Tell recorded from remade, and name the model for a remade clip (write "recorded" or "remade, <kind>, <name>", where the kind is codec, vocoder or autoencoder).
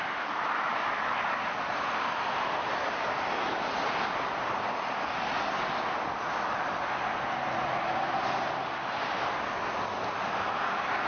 recorded